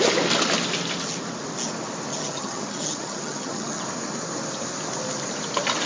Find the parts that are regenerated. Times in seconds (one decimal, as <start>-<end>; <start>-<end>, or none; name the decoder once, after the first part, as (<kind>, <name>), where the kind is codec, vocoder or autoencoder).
2.1-3.8 (vocoder, HiFi-GAN)